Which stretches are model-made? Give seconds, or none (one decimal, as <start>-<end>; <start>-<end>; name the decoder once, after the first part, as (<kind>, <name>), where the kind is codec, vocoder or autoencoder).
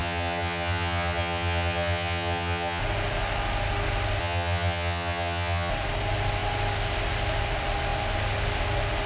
0.0-2.8 (vocoder, HiFi-GAN); 4.2-5.7